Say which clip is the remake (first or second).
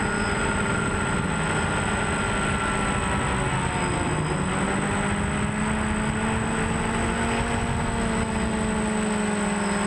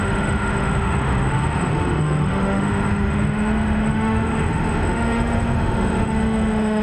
second